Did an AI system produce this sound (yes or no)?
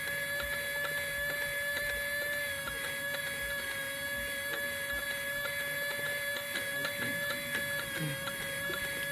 no